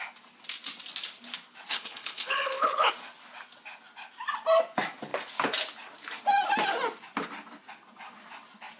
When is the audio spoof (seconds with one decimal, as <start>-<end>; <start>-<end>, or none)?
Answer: 1.7-2.9

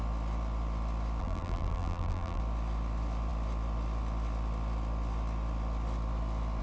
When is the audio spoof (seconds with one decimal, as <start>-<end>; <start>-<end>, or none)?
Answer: 1.2-2.4

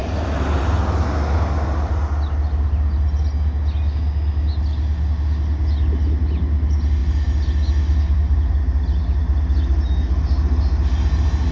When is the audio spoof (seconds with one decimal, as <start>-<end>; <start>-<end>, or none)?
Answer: 0.0-0.6

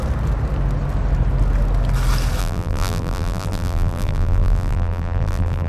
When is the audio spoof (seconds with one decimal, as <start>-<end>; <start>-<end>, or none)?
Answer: 2.4-5.7

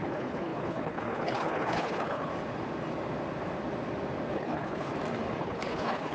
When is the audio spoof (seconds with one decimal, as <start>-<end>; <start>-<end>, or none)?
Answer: 0.0-2.3; 4.3-4.9; 5.4-6.1

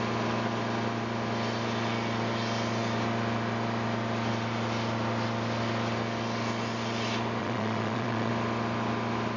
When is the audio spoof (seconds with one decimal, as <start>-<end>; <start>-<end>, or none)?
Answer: 7.4-8.3

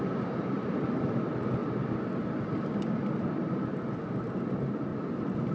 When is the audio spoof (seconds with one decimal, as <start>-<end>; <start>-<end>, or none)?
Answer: 0.0-1.6; 4.2-4.9